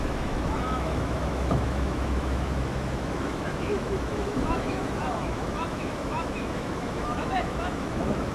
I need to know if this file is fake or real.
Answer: fake